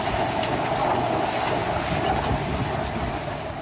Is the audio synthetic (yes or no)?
no